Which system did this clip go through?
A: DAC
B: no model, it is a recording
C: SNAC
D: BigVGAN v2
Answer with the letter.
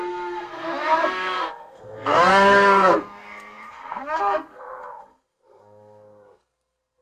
C